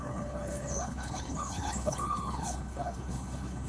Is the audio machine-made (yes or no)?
yes